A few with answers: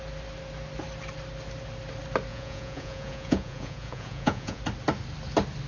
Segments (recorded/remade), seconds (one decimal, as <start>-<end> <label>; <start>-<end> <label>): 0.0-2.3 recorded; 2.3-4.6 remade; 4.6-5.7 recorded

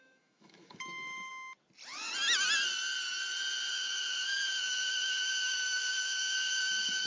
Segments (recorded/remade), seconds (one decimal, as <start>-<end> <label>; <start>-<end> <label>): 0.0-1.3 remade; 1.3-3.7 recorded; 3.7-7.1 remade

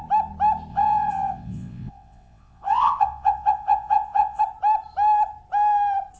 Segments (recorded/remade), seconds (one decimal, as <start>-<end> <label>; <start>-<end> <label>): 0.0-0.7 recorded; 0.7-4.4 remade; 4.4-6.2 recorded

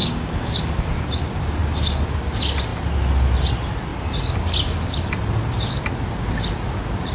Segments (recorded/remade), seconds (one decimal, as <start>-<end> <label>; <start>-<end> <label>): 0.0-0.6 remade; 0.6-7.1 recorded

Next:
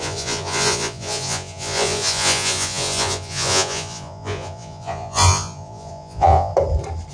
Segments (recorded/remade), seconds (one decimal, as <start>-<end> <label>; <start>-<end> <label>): 0.0-6.5 remade; 6.5-7.1 recorded

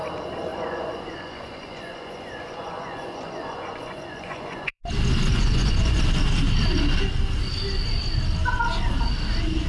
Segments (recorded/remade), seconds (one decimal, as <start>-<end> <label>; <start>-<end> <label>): 0.0-0.5 recorded; 0.5-4.8 remade; 4.8-5.3 recorded; 5.3-6.0 remade; 6.0-9.7 recorded